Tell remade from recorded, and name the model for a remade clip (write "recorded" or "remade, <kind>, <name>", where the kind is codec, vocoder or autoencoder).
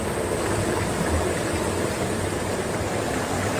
recorded